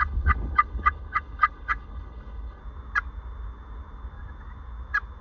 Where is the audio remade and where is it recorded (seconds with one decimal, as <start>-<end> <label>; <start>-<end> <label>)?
0.0-2.6 remade; 2.6-5.2 recorded